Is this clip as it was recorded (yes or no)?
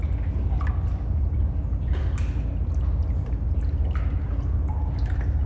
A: yes